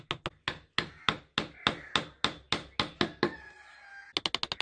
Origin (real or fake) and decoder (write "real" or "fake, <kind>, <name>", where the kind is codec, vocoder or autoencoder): real